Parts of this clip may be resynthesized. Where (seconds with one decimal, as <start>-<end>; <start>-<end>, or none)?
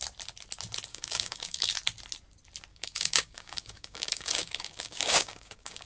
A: 0.9-1.7; 2.7-5.9